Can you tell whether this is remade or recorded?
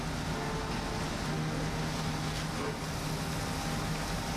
recorded